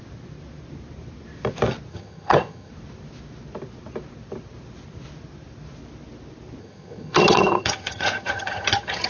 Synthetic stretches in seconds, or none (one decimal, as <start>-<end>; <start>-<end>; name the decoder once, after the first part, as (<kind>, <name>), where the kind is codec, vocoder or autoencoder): 1.9-2.7 (vocoder, HiFi-GAN); 6.6-9.1